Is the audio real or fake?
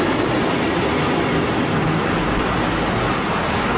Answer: real